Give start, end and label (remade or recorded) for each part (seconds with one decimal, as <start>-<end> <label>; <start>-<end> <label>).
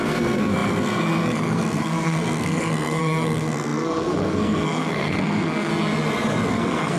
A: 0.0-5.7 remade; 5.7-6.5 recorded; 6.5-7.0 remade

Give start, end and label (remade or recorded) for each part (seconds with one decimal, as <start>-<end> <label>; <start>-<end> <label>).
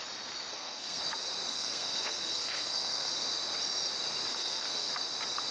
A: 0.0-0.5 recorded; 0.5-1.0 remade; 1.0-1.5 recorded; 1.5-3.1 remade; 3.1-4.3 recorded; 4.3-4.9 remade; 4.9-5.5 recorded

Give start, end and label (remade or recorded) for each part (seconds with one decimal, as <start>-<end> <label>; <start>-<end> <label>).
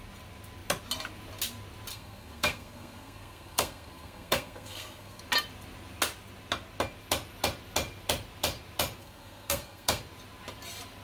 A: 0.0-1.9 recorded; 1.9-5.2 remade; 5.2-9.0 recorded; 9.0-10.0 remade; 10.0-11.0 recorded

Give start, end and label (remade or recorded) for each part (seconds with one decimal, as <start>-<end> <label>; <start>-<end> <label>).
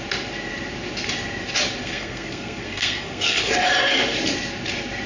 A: 0.0-1.8 recorded; 1.8-3.5 remade; 3.5-5.1 recorded